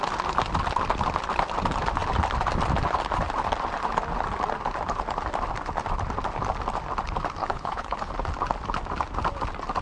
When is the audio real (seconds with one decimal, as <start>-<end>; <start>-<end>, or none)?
0.0-7.4; 8.1-9.8